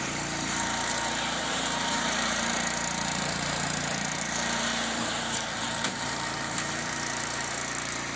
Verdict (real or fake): fake